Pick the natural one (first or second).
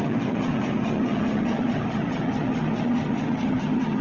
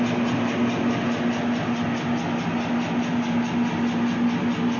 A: second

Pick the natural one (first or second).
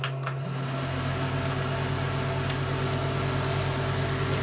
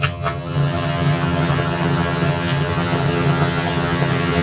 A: first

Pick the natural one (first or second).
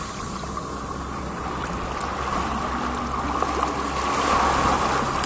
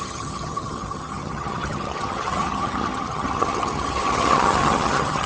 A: first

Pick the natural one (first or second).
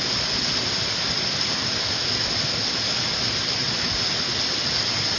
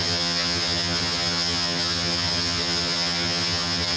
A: first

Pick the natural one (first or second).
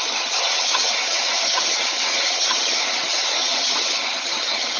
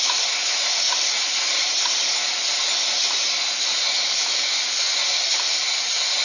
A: second